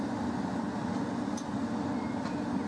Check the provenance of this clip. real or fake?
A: real